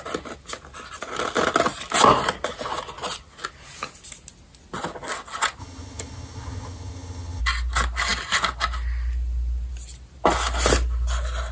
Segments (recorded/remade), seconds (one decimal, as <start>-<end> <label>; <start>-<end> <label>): 0.0-5.6 recorded; 5.6-7.4 remade; 7.4-11.5 recorded